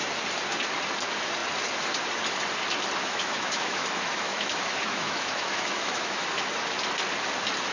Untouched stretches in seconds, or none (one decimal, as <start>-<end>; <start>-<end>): 0.0-3.0; 6.5-7.7